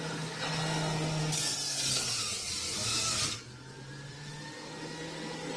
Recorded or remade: recorded